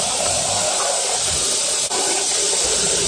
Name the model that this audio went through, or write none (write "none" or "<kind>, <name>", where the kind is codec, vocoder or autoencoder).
none